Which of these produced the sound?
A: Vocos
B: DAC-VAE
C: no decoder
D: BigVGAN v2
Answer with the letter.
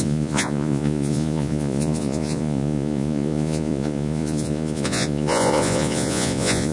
A